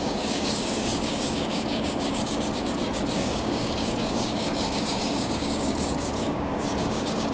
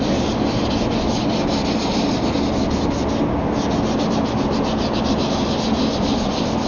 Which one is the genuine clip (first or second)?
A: second